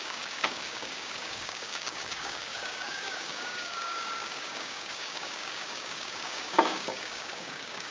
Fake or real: fake